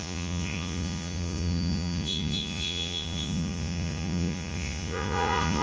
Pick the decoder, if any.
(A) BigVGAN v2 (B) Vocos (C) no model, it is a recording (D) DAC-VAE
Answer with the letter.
B